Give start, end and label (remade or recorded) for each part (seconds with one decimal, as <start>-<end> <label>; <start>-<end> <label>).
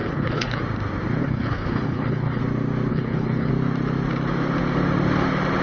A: 0.0-0.6 remade; 0.6-1.2 recorded; 1.2-2.4 remade; 2.4-2.9 recorded; 2.9-3.5 remade; 3.5-5.6 recorded